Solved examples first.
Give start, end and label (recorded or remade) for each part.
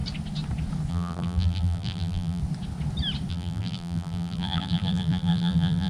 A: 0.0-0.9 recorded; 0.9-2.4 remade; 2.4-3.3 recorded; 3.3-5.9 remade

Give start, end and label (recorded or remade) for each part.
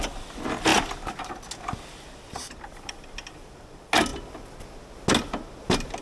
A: 0.0-6.0 recorded